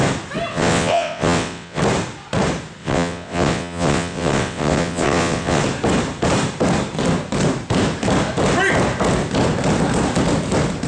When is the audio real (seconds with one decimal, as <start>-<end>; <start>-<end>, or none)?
0.0-0.5; 1.8-2.8; 5.6-10.9